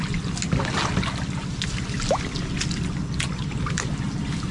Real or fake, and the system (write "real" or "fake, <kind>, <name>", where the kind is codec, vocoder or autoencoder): real